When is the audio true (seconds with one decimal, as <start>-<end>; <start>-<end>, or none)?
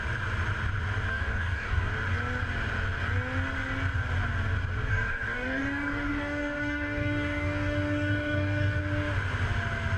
0.0-1.1; 1.9-4.9; 8.8-10.0